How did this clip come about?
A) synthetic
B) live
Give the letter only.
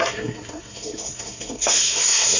A